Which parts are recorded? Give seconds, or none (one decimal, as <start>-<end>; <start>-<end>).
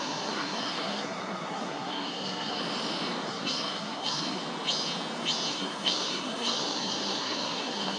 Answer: 2.6-3.3; 4.4-5.5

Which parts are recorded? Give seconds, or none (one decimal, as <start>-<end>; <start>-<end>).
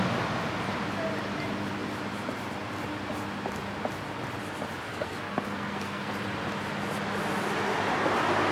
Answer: 0.0-4.9; 6.1-8.5